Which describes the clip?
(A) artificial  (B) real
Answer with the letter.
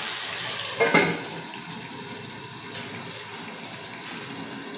B